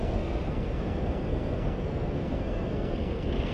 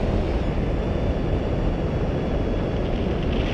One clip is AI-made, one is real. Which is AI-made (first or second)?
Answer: first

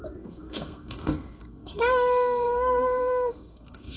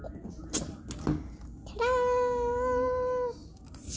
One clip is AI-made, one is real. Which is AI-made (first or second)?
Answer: first